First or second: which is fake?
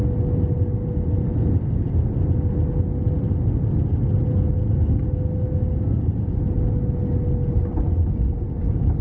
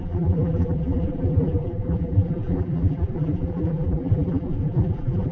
second